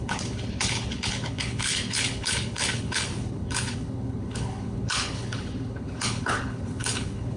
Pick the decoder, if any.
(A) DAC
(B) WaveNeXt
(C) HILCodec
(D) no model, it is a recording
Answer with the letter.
C